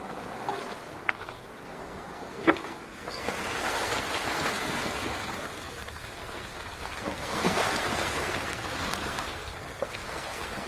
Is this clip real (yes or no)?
no